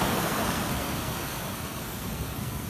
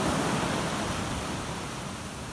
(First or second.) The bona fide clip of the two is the second